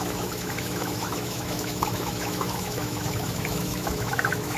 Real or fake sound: fake